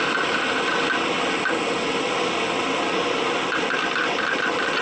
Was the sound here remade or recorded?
recorded